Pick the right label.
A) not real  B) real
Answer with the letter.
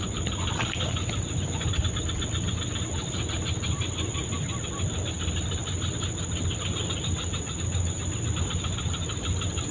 B